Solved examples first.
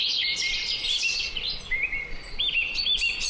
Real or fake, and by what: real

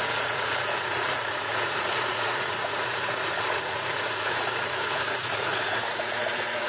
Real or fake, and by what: fake, vocoder, Vocos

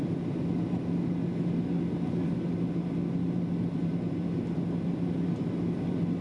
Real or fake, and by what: real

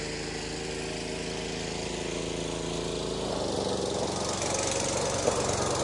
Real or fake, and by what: real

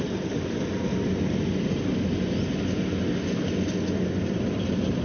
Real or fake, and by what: real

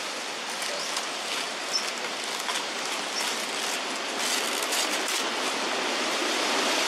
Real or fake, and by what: real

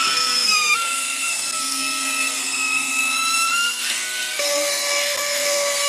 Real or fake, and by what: fake, codec, SNAC